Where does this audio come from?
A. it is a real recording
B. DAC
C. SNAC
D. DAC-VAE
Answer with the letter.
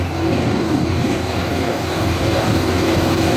B